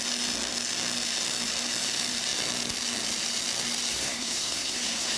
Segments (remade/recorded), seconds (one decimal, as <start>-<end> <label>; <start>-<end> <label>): 0.0-3.9 recorded; 3.9-5.2 remade